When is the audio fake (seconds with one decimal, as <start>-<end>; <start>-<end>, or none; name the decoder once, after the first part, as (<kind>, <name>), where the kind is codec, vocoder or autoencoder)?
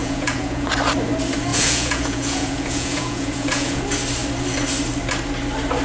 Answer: 0.0-0.7 (vocoder, Vocos); 1.5-3.8